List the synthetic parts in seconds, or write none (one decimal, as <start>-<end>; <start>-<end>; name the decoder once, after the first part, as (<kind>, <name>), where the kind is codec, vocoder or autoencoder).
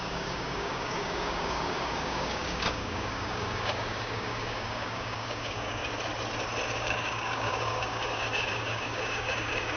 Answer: 0.0-5.8 (codec, DAC); 6.7-9.8